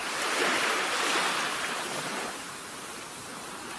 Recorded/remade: recorded